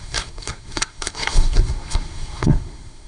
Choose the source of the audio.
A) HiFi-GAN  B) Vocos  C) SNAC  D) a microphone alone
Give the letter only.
C